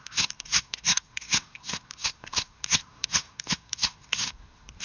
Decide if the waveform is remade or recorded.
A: remade